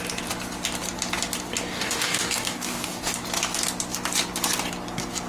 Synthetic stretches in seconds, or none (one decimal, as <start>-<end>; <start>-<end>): 1.7-3.1